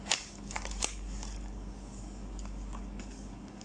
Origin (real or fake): fake